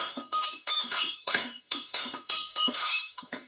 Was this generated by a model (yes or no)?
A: yes